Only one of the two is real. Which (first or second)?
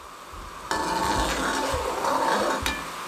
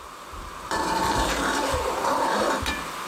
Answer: first